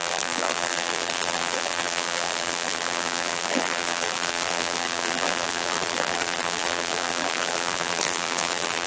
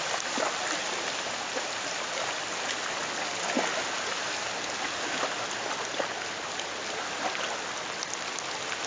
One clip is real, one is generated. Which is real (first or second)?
second